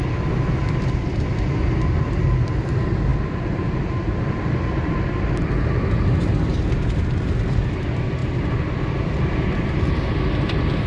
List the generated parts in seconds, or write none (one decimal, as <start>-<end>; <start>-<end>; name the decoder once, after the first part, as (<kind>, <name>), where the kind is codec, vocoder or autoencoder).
none

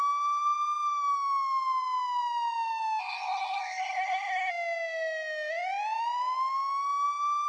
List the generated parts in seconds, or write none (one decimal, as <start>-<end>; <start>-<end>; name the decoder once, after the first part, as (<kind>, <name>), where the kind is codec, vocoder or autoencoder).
3.0-4.5 (codec, SNAC)

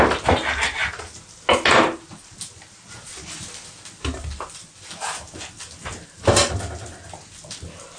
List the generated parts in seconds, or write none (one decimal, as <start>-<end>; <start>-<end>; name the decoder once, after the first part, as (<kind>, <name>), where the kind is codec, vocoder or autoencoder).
none

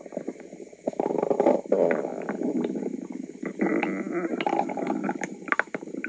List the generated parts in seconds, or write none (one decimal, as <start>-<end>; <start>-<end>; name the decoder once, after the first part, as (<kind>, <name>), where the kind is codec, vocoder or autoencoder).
none

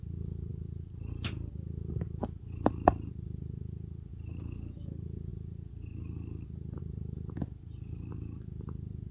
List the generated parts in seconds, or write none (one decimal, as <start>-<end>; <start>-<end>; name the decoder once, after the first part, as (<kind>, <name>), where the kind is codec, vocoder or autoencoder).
none

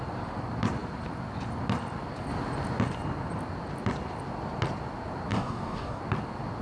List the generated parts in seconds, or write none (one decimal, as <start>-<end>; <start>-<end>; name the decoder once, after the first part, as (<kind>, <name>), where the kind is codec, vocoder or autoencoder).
5.3-6.0 (codec, DAC)

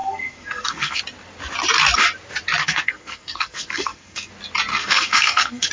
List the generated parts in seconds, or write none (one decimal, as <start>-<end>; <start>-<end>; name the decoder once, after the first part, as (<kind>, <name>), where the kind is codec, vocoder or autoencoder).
0.0-1.0 (codec, SNAC); 2.6-4.3; 4.7-5.7

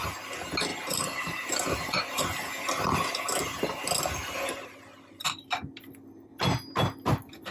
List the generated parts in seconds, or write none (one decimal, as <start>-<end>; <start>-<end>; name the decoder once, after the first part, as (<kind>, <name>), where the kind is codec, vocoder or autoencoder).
0.7-2.2 (vocoder, BigVGAN v2)